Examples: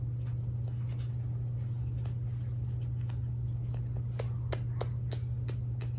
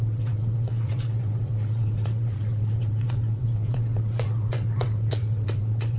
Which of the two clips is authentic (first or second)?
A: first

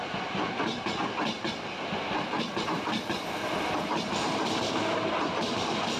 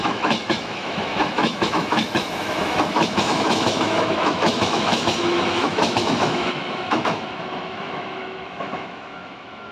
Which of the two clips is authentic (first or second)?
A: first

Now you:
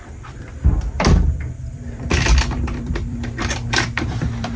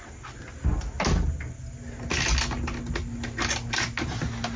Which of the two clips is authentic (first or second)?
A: second